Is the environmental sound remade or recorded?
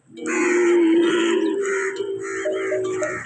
recorded